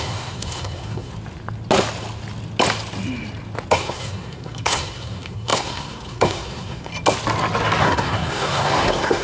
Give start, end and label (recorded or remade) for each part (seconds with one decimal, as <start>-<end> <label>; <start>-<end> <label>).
0.0-1.1 remade; 1.1-3.7 recorded; 3.7-6.9 remade; 6.9-7.8 recorded; 7.8-9.2 remade